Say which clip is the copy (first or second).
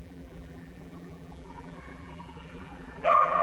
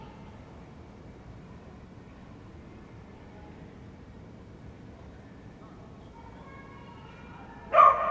first